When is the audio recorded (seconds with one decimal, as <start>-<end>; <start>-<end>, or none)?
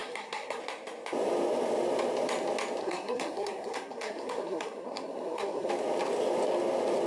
0.6-2.8; 5.7-7.1